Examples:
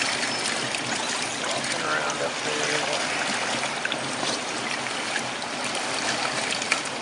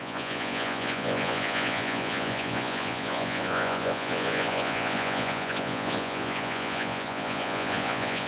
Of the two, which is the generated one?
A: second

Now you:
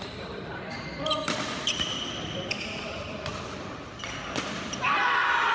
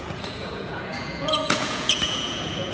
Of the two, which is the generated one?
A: second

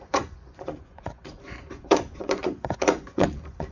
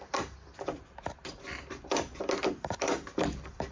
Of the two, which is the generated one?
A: first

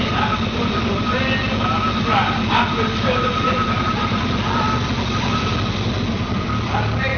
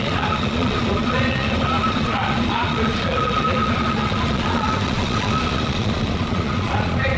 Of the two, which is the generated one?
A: second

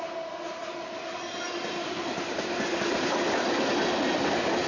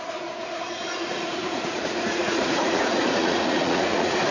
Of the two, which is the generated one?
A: second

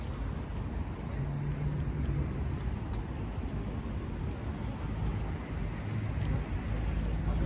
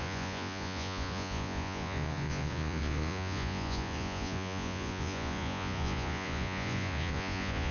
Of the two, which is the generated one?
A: second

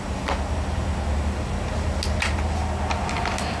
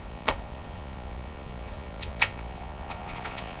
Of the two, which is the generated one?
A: second